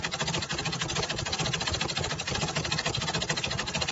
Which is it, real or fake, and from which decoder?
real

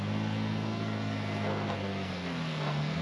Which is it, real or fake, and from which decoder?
fake, codec, SNAC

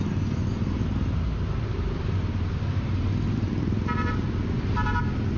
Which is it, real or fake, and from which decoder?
real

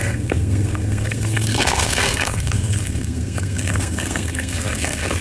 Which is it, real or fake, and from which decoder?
fake, codec, SNAC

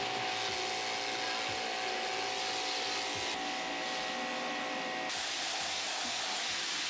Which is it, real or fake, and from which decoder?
real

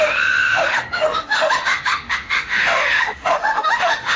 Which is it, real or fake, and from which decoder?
fake, autoencoder, DAC-VAE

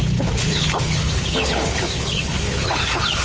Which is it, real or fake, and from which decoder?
fake, codec, HILCodec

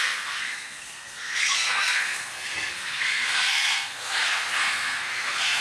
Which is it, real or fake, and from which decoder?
fake, codec, SNAC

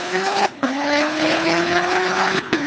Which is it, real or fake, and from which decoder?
fake, codec, HILCodec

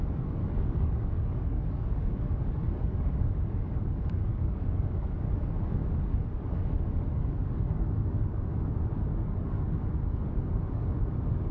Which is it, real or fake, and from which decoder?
fake, codec, DAC